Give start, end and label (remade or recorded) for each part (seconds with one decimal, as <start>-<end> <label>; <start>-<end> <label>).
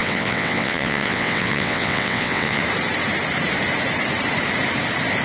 0.0-2.6 remade; 2.6-5.2 recorded